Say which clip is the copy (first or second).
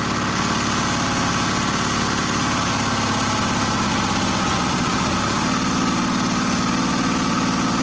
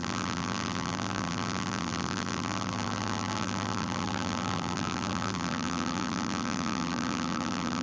second